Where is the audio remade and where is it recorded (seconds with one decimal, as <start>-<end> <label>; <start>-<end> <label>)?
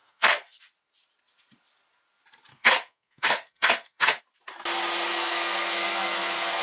0.0-0.6 remade; 0.6-2.5 recorded; 2.5-4.2 remade; 4.2-5.1 recorded; 5.1-6.6 remade